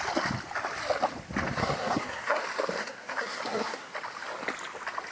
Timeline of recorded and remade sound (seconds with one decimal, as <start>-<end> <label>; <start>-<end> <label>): 0.0-1.6 recorded; 1.6-2.4 remade; 2.4-2.8 recorded; 2.8-3.9 remade; 3.9-5.1 recorded